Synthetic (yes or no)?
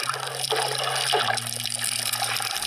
no